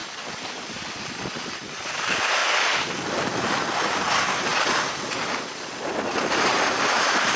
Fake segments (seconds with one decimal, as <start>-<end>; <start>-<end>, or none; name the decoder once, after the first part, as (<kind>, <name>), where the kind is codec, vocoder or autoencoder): 1.7-2.4 (vocoder, BigVGAN v2); 3.9-4.5; 6.1-7.4